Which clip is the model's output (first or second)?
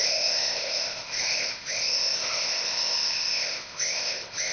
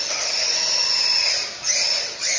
first